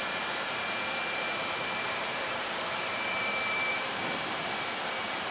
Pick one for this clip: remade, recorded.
remade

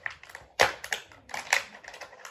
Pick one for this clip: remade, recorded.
remade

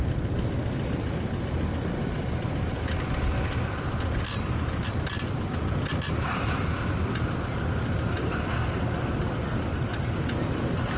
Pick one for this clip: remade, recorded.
remade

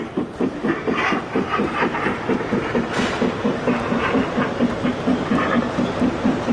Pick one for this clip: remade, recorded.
remade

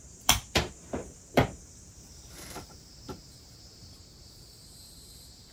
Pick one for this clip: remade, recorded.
remade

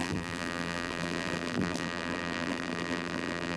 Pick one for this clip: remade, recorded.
remade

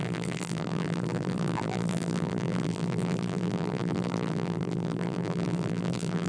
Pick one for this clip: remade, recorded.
remade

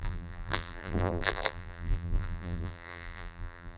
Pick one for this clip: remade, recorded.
remade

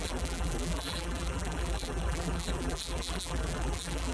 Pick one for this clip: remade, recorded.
remade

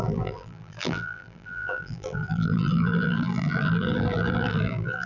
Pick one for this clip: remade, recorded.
remade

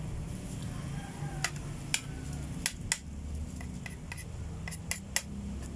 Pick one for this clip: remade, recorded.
recorded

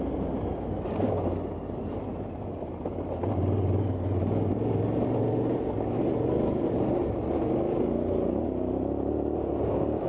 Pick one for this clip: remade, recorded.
recorded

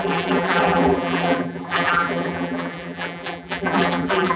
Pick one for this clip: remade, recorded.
remade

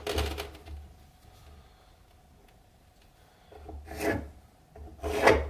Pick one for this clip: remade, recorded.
recorded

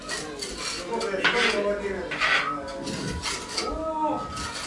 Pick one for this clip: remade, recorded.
recorded